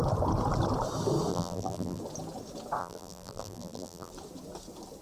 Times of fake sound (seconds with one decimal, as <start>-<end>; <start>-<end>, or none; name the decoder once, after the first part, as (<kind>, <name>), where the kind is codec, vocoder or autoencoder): 1.3-2.0 (vocoder, BigVGAN v2); 2.8-4.1